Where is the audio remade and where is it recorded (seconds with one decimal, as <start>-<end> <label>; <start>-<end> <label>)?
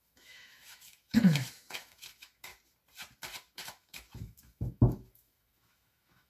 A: 0.0-2.5 remade; 2.5-3.5 recorded; 3.5-6.3 remade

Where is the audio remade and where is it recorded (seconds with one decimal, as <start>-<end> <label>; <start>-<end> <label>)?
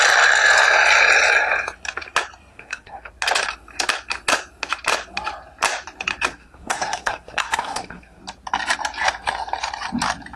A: 0.0-2.5 recorded; 2.5-3.1 remade; 3.1-6.3 recorded; 6.3-8.2 remade; 8.2-10.4 recorded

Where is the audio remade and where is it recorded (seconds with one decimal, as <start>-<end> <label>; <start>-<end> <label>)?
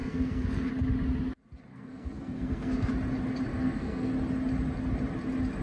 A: 0.0-0.7 remade; 0.7-1.7 recorded; 1.7-2.9 remade; 2.9-3.5 recorded; 3.5-4.1 remade; 4.1-5.6 recorded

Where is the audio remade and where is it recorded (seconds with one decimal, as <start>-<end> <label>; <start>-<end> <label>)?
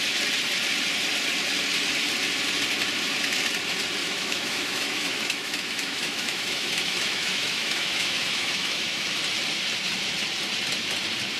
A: 0.0-4.0 recorded; 4.0-9.2 remade; 9.2-11.4 recorded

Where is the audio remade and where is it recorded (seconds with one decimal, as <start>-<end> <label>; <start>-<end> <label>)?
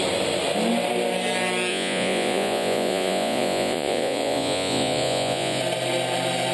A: 0.0-1.7 recorded; 1.7-5.6 remade; 5.6-6.5 recorded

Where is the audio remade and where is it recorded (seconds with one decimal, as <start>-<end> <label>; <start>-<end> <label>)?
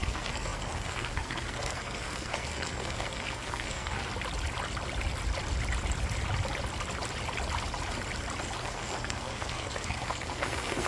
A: 0.0-4.1 remade; 4.1-8.6 recorded; 8.6-10.9 remade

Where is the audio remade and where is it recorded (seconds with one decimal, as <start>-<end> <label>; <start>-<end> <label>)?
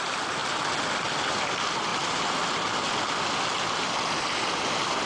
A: 0.0-0.4 remade; 0.4-1.0 recorded; 1.0-1.9 remade; 1.9-4.6 recorded; 4.6-5.1 remade